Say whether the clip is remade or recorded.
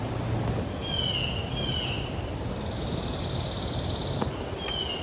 recorded